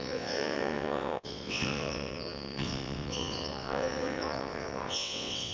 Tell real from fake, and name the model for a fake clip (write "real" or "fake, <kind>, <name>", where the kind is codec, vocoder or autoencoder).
fake, vocoder, WaveNeXt